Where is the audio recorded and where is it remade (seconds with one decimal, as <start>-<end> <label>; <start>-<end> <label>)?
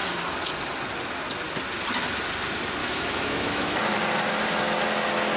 0.0-2.8 recorded; 2.8-3.8 remade; 3.8-5.4 recorded